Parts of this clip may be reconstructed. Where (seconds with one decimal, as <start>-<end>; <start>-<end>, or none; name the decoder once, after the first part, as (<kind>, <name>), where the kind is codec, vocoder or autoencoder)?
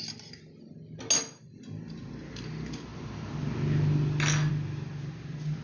none